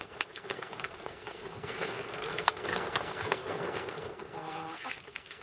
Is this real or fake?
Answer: fake